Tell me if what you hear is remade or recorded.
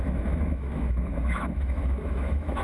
remade